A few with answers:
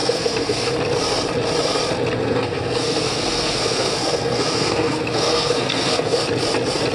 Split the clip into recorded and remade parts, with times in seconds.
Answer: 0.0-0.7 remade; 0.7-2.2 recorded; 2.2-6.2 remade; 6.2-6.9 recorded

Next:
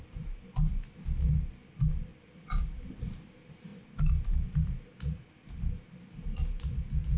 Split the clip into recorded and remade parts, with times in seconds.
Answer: 0.0-7.2 recorded

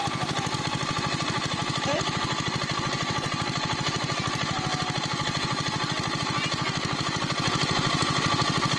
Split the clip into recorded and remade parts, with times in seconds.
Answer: 0.0-8.8 recorded

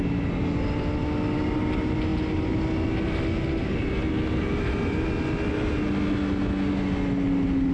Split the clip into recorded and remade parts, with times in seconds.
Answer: 0.0-7.7 recorded

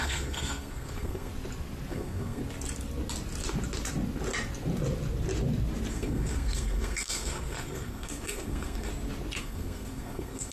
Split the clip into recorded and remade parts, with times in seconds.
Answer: 0.0-1.3 remade; 1.3-1.9 recorded; 1.9-2.4 remade; 2.4-5.9 recorded; 5.9-8.9 remade; 8.9-9.4 recorded; 9.4-10.5 remade

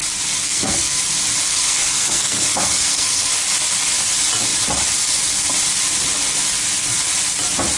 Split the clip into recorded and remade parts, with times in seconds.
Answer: 0.0-0.4 recorded; 0.4-1.0 remade; 1.0-1.5 recorded; 1.5-3.3 remade; 3.3-7.8 recorded

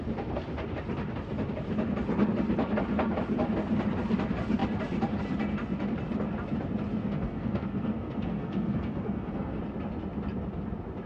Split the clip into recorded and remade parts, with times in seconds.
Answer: 0.0-7.0 recorded; 7.0-9.6 remade; 9.6-11.1 recorded

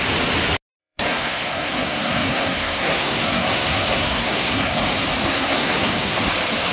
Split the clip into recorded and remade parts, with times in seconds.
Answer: 0.0-0.8 recorded; 0.8-4.8 remade; 4.8-5.3 recorded; 5.3-6.2 remade; 6.2-6.7 recorded